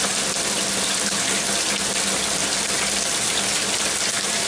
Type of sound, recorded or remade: recorded